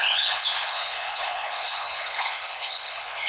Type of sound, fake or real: fake